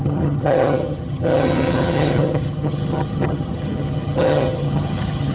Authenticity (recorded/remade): remade